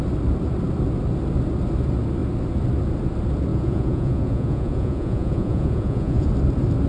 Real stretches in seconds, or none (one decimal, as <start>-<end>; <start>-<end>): 0.0-3.5; 6.3-6.9